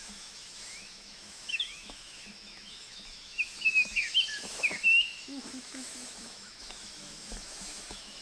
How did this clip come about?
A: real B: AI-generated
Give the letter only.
B